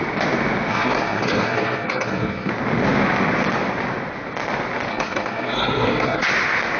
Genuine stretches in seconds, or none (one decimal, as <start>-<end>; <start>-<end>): 0.0-0.7; 2.5-4.9; 6.3-6.8